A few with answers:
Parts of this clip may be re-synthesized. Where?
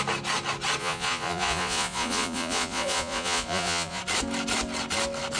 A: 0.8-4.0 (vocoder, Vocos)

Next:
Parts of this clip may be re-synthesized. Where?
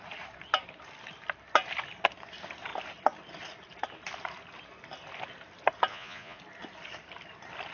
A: 5.9-6.4 (vocoder, Vocos)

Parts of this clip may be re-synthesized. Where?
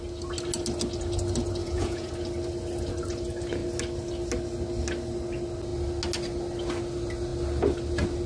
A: 1.6-2.1 (vocoder, Vocos)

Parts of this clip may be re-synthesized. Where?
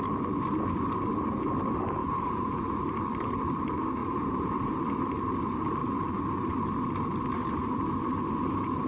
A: 2.0-2.7 (vocoder, Vocos); 4.0-4.7